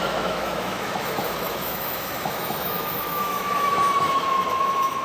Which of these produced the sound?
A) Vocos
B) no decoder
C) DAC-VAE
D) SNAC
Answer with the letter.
C